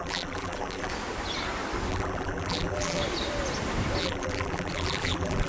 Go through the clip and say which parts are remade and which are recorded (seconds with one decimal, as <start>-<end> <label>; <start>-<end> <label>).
0.0-0.9 remade; 0.9-1.9 recorded; 1.9-3.0 remade; 3.0-4.0 recorded; 4.0-5.5 remade

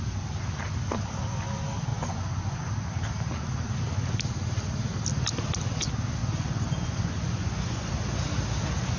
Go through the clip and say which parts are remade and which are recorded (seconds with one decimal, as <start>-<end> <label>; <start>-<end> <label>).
0.0-1.9 recorded; 1.9-2.7 remade; 2.7-6.2 recorded; 6.2-7.9 remade; 7.9-9.0 recorded

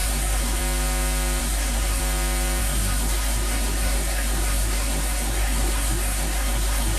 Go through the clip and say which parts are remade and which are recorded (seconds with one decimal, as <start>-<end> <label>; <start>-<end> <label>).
0.0-0.6 remade; 0.6-1.4 recorded; 1.4-2.0 remade; 2.0-2.6 recorded; 2.6-7.0 remade

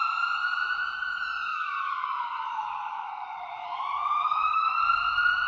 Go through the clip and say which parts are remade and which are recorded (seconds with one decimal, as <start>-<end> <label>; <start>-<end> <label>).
0.0-1.5 recorded; 1.5-4.8 remade; 4.8-5.5 recorded

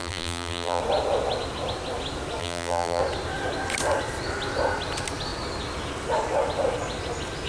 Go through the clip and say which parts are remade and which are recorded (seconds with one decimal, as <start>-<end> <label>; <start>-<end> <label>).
0.0-0.8 remade; 0.8-2.4 recorded; 2.4-3.0 remade; 3.0-7.5 recorded

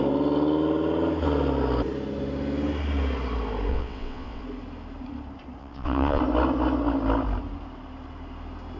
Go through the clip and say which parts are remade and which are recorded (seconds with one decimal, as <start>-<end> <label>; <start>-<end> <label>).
0.0-3.7 recorded; 3.7-4.4 remade; 4.4-5.6 recorded; 5.6-6.2 remade; 6.2-8.8 recorded